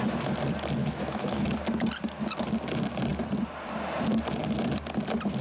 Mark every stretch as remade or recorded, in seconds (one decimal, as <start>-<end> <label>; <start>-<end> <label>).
0.0-0.8 recorded; 0.8-1.5 remade; 1.5-5.4 recorded